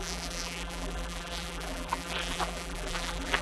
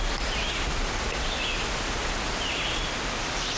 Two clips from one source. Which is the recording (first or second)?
second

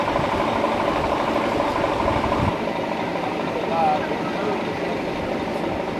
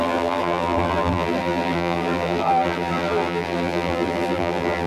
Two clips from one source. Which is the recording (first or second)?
first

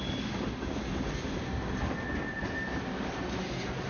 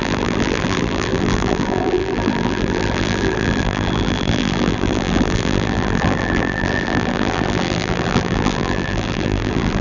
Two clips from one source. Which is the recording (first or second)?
first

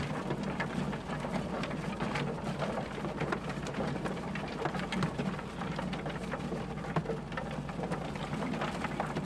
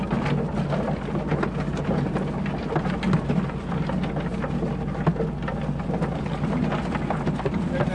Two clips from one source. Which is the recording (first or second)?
second